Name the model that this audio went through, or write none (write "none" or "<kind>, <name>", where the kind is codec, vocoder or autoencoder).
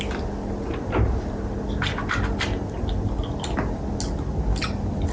none